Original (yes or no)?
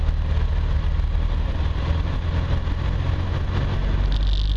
yes